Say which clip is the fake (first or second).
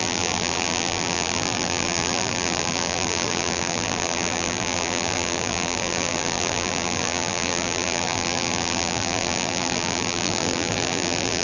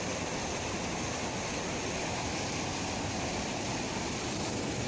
first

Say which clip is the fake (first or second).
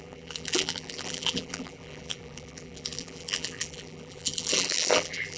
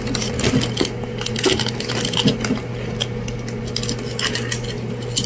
first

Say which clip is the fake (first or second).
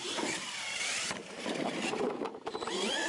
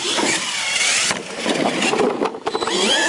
first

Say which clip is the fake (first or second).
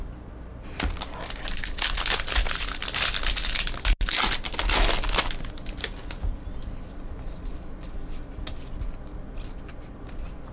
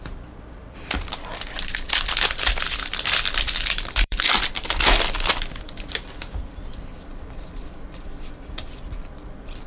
second